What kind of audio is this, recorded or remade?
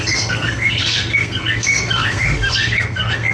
remade